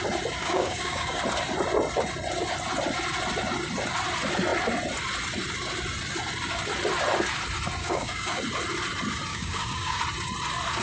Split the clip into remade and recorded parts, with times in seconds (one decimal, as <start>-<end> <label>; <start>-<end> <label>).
0.0-0.4 recorded; 0.4-1.2 remade; 1.2-7.8 recorded; 7.8-8.4 remade; 8.4-9.3 recorded; 9.3-10.0 remade; 10.0-10.8 recorded